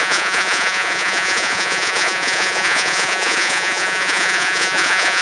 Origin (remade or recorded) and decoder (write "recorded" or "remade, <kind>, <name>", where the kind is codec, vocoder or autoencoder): remade, vocoder, Vocos